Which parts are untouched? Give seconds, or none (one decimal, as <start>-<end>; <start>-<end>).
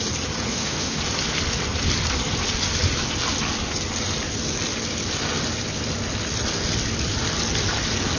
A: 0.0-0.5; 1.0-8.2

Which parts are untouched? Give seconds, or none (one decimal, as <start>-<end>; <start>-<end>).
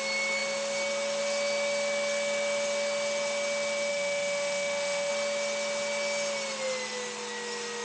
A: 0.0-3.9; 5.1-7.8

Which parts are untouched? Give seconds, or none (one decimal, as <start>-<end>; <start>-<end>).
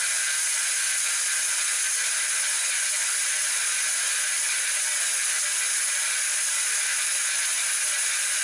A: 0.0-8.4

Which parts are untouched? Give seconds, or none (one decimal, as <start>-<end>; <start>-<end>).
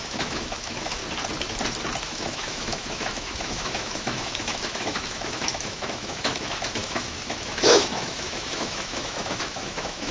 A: 1.0-2.0